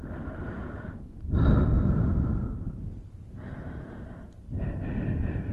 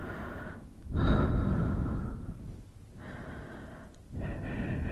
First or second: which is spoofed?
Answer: first